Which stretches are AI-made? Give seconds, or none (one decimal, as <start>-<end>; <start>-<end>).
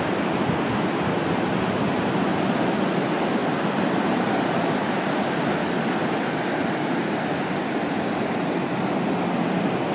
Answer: none